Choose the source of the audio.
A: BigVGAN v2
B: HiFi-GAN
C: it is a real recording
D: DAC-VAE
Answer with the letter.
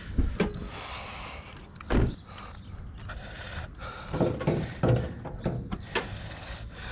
C